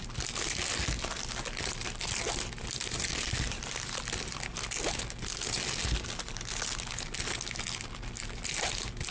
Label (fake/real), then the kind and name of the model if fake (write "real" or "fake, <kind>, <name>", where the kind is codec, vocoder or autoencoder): real